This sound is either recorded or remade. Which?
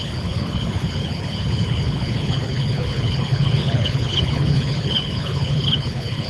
remade